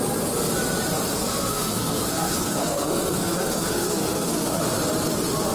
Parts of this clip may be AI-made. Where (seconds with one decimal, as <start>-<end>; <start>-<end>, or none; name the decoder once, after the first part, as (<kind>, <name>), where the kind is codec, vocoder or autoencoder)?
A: 1.3-4.6 (codec, SNAC)